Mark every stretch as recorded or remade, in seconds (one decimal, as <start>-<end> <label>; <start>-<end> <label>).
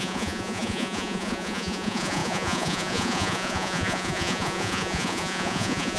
0.0-6.0 remade